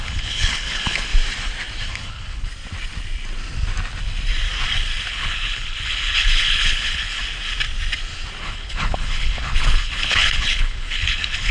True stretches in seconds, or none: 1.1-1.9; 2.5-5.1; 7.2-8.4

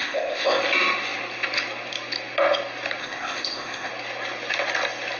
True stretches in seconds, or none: 0.6-3.0; 3.9-5.2

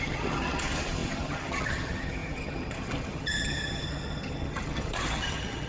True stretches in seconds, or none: none

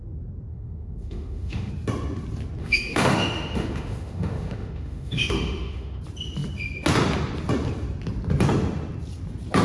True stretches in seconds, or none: 0.0-0.5; 1.7-2.6; 6.0-9.6

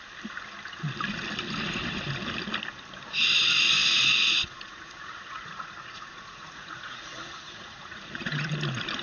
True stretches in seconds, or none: 0.0-3.8; 8.5-9.0

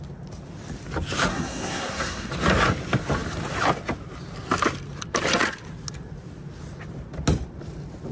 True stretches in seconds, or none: 0.0-1.3; 2.3-8.1

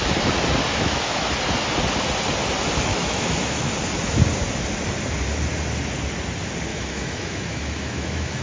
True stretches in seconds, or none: 0.0-0.7; 1.3-2.9; 3.7-6.7